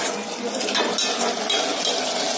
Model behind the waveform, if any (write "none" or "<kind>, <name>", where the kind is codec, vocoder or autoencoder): none